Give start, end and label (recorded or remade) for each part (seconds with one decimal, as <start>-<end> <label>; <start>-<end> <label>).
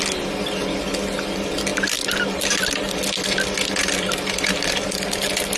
0.0-5.6 recorded